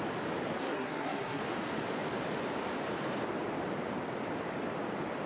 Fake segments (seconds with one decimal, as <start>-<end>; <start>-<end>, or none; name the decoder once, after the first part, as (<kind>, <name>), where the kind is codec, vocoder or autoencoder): 0.6-1.4 (codec, SNAC)